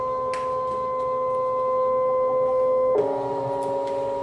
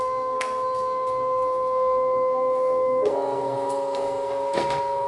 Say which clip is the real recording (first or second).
first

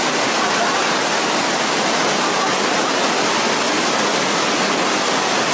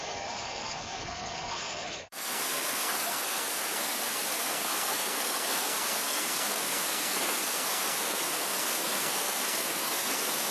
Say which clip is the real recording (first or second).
first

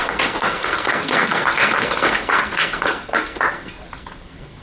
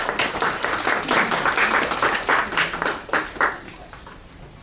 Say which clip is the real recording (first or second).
second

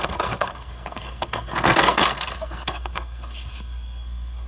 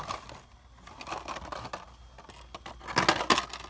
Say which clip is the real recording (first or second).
second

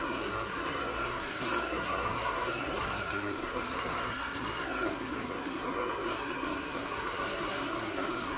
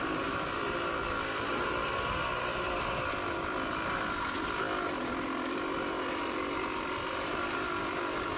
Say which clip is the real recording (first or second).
second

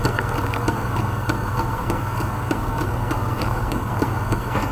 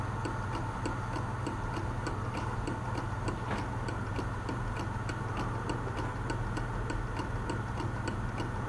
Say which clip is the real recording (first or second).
second